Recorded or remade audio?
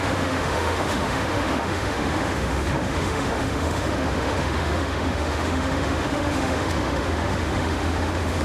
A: remade